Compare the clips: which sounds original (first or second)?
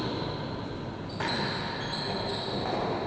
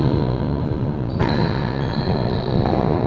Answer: first